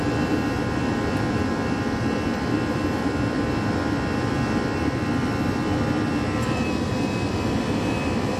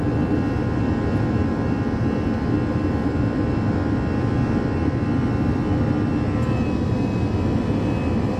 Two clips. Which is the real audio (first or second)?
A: second